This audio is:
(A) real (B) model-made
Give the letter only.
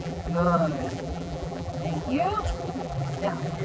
B